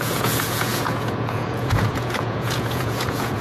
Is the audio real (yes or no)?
no